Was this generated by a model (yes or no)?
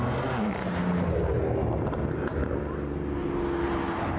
no